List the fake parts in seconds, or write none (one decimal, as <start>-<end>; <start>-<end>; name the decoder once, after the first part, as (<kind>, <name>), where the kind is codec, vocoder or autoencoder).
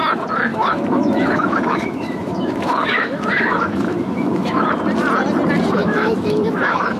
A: 0.5-4.7 (autoencoder, DAC-VAE); 5.8-7.0